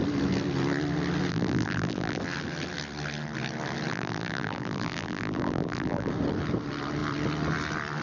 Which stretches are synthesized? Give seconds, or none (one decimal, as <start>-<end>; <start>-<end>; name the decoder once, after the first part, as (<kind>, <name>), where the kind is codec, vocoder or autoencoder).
1.3-2.2 (vocoder, BigVGAN v2); 3.9-6.1